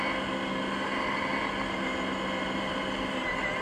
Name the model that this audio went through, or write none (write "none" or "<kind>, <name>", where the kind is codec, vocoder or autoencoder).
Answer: none